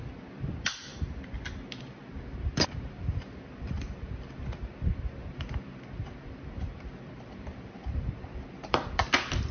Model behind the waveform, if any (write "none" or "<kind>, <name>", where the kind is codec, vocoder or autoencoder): vocoder, BigVGAN v2